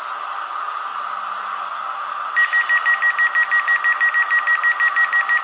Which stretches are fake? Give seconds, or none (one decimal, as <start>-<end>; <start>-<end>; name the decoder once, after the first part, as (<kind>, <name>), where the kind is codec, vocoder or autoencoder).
none